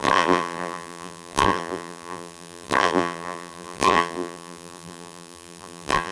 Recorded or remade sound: remade